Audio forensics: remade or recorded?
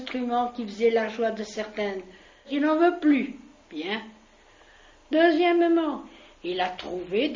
recorded